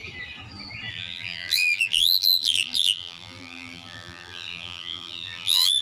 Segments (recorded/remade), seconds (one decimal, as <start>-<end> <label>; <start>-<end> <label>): 0.0-0.9 recorded; 0.9-5.8 remade